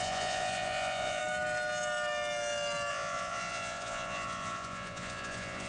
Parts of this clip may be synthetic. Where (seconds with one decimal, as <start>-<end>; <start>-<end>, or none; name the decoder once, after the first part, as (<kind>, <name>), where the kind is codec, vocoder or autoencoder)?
0.0-1.2 (vocoder, Vocos); 2.9-5.7